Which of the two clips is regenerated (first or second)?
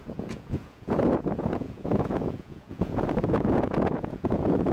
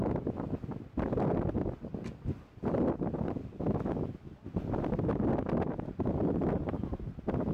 first